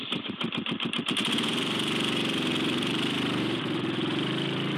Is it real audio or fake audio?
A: fake